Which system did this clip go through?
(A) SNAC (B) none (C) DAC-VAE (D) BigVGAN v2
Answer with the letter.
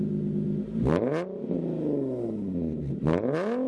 B